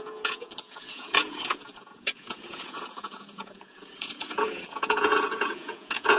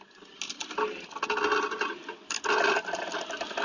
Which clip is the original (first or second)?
second